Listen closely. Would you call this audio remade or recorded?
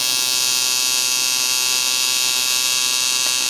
recorded